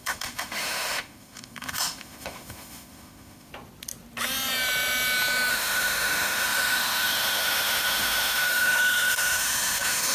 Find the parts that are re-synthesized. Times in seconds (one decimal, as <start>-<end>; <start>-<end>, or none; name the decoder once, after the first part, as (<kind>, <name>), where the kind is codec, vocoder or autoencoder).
0.0-3.5 (autoencoder, DAC-VAE); 5.5-10.1